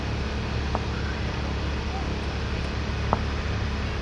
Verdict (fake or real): real